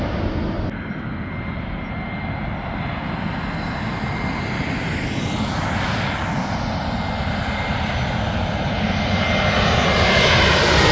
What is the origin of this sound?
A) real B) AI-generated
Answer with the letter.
A